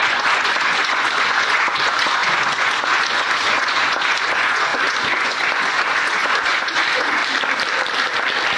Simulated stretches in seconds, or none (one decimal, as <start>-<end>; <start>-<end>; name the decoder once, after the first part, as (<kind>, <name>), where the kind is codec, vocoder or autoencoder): 0.0-7.2 (vocoder, Vocos)

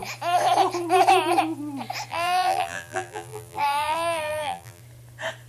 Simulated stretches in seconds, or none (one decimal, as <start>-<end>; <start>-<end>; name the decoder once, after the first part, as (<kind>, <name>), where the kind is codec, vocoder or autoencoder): 2.1-4.8 (vocoder, BigVGAN v2)

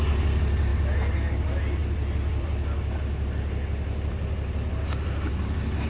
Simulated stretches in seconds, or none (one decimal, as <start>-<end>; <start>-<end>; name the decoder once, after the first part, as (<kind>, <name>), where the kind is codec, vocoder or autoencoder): 0.7-1.3 (vocoder, BigVGAN v2); 1.8-5.3

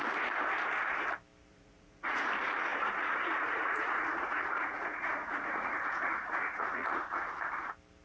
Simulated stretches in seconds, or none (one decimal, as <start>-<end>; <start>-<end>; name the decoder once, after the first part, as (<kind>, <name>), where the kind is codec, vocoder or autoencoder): 1.5-2.3 (vocoder, Vocos); 2.7-7.0